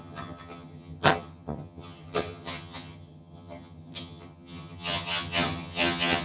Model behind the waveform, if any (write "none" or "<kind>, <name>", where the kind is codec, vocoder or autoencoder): vocoder, HiFi-GAN